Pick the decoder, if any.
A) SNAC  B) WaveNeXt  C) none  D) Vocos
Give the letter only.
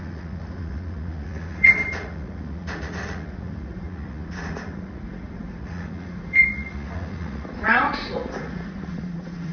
D